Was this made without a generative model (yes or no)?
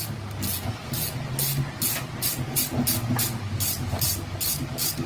yes